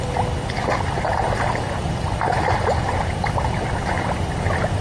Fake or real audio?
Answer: fake